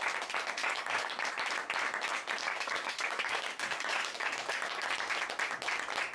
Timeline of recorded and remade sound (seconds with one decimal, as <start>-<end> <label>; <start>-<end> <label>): 0.0-0.6 recorded; 0.6-1.3 remade; 1.3-2.4 recorded; 2.4-4.9 remade; 4.9-6.1 recorded